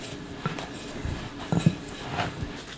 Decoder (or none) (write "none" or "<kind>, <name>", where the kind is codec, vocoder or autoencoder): none